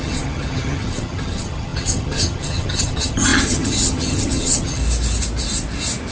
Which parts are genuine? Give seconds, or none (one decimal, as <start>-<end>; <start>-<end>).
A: 4.8-6.1